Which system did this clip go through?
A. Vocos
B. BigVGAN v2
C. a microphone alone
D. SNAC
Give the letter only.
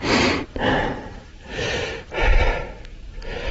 B